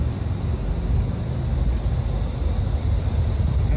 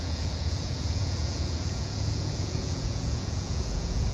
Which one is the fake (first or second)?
second